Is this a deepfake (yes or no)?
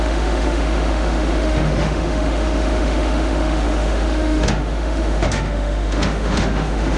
yes